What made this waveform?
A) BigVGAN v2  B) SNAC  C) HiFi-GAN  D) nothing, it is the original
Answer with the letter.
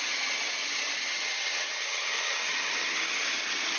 C